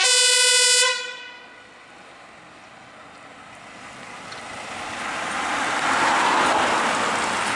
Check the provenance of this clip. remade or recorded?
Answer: recorded